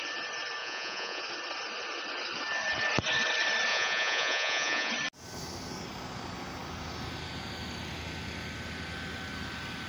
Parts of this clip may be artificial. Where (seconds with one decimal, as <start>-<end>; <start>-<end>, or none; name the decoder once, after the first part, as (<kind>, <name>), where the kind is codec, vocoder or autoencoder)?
0.6-1.2 (vocoder, Vocos); 3.7-4.9

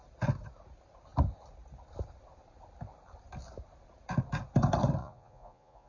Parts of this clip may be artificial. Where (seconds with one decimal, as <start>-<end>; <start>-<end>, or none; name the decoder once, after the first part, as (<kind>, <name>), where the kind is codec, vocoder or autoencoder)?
5.0-5.9 (vocoder, Vocos)

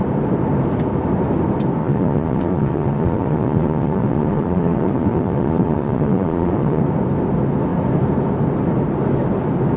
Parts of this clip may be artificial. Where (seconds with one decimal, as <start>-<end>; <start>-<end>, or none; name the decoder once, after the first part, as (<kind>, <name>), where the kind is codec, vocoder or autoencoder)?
1.8-6.8 (vocoder, Vocos)

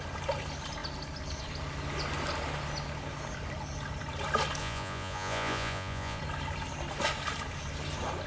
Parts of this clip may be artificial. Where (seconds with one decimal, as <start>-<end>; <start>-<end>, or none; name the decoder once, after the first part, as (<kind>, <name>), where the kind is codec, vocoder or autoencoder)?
4.6-6.2 (vocoder, Vocos)

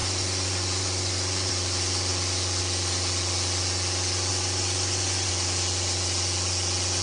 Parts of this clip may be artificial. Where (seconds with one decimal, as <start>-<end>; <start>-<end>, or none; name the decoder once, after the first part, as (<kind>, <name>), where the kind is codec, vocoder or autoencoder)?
0.0-1.5 (vocoder, Vocos); 4.3-5.3

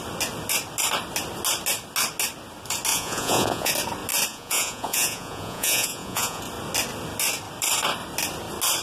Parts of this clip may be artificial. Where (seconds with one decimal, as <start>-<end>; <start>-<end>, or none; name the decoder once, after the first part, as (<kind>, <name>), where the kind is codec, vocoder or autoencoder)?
2.9-3.7 (vocoder, Vocos); 4.3-6.4

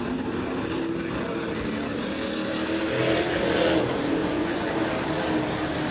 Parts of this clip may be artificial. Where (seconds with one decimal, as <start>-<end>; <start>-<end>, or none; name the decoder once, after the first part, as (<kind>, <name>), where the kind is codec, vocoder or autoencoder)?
4.2-4.7 (vocoder, Vocos)

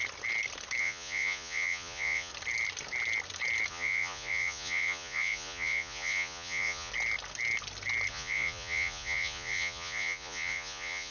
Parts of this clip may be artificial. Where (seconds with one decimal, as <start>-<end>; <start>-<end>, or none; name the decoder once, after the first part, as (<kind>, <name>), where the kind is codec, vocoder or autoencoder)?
0.8-2.3 (vocoder, Vocos); 3.7-6.9; 8.1-11.1